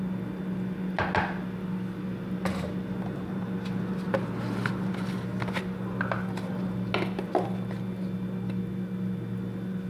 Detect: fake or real real